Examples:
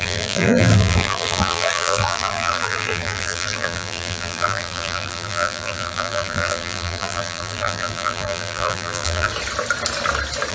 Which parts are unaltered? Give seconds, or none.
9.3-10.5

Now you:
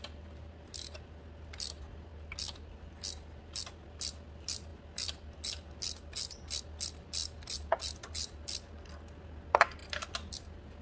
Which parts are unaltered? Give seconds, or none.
0.0-10.8

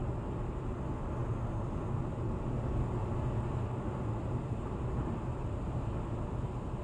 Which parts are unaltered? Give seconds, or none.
0.0-6.8

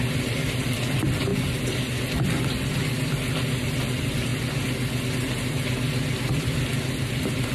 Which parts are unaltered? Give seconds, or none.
1.3-2.0; 4.3-6.3

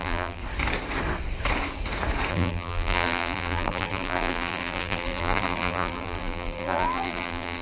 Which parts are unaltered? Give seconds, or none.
0.4-2.3

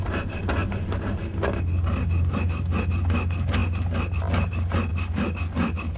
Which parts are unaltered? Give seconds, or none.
0.0-6.0

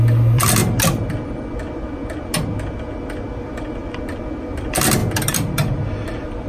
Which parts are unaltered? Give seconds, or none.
0.6-3.4; 3.8-4.4; 5.0-6.0

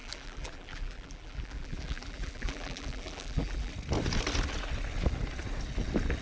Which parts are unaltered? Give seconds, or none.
3.7-6.2